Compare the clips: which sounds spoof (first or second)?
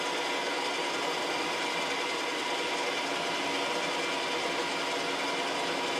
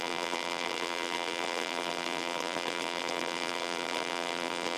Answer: second